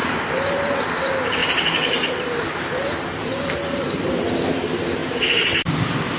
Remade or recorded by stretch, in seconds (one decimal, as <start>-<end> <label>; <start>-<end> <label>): 0.0-0.8 remade; 0.8-1.4 recorded; 1.4-4.2 remade; 4.2-5.0 recorded; 5.0-6.2 remade